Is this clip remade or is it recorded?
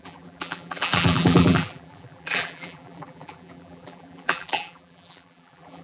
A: remade